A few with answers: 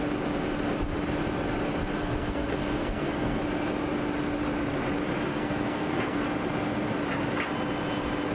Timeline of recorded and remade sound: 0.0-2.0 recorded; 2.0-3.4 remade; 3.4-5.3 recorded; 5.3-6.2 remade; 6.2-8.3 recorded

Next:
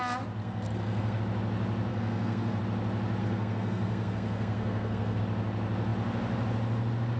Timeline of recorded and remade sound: 0.0-0.4 recorded; 0.4-1.2 remade; 1.2-1.9 recorded; 1.9-2.6 remade; 2.6-3.2 recorded; 3.2-5.2 remade; 5.2-7.2 recorded